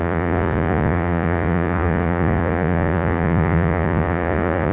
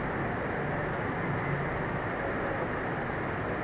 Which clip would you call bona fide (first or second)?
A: second